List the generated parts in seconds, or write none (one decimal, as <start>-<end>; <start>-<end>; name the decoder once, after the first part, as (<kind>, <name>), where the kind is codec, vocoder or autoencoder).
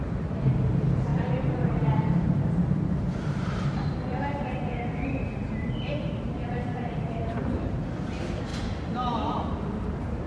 0.0-10.3 (vocoder, BigVGAN v2)